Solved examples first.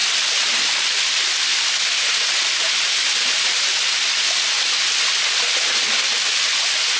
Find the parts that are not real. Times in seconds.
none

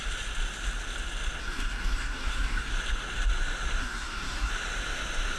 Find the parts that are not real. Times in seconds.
1.4-2.7 (codec, DAC); 3.8-4.5

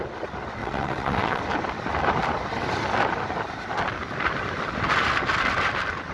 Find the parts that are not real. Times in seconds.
0.6-1.4 (vocoder, WaveNeXt)

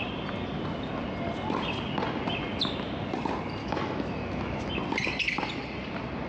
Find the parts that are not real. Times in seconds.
3.6-4.7 (autoencoder, DAC-VAE)

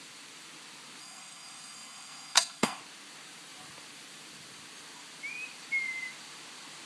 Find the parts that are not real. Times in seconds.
1.0-2.8 (codec, SNAC)

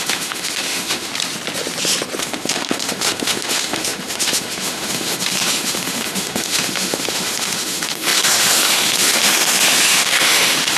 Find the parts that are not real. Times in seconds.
0.0-1.1 (autoencoder, DAC-VAE); 2.2-10.8